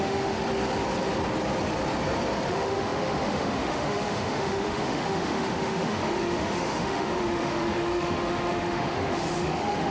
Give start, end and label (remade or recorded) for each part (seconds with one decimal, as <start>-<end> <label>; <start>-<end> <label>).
0.0-0.4 remade; 0.4-2.5 recorded; 2.5-9.9 remade

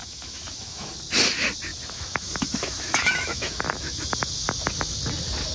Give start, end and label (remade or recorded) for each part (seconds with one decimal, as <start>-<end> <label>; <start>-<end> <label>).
0.0-0.9 remade; 0.9-1.7 recorded; 1.7-4.7 remade; 4.7-5.5 recorded

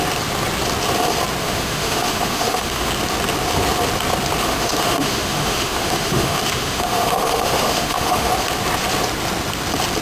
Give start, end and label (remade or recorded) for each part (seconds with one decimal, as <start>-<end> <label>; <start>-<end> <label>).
0.0-1.4 recorded; 1.4-2.9 remade; 2.9-4.4 recorded; 4.4-8.3 remade; 8.3-10.0 recorded